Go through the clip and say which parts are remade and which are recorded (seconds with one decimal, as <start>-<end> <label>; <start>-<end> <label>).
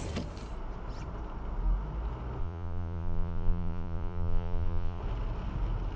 0.0-2.4 recorded; 2.4-5.0 remade; 5.0-6.0 recorded